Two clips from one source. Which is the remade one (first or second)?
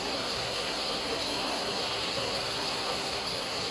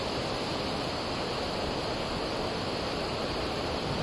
first